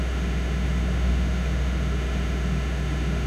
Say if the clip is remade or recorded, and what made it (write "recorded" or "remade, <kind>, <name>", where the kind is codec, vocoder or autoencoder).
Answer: remade, autoencoder, DAC-VAE